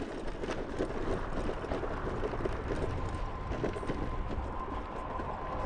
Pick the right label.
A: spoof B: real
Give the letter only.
B